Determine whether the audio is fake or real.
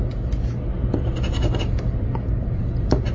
real